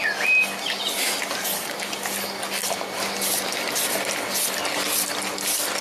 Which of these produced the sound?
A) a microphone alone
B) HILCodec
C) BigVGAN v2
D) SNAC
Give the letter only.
A